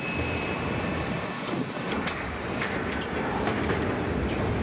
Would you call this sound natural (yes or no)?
yes